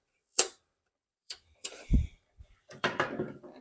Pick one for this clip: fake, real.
fake